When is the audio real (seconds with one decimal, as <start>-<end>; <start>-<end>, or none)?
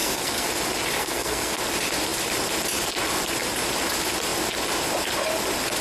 0.5-1.0; 1.6-5.8